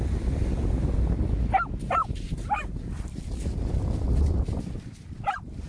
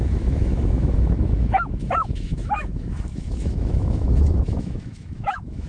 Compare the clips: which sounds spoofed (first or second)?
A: second